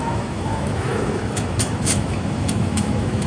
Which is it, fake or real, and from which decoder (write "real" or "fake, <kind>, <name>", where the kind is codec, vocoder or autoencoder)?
fake, autoencoder, DAC-VAE